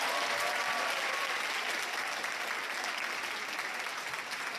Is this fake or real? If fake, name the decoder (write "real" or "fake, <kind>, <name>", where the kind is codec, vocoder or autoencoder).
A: real